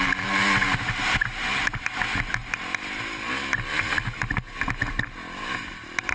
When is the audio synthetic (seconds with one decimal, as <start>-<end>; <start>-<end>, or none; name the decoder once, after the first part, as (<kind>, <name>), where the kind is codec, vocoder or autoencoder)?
none